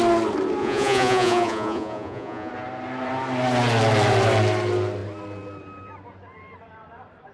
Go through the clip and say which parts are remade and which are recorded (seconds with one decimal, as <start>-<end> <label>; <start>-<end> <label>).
0.0-0.6 recorded; 0.6-2.5 remade; 2.5-7.3 recorded